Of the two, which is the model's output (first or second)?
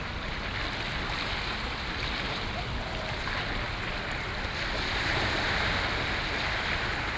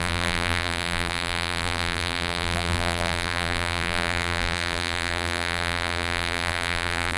second